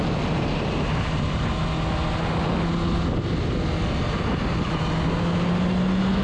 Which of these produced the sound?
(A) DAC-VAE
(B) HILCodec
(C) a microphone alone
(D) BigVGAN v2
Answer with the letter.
C